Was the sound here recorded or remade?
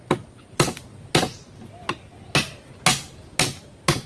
recorded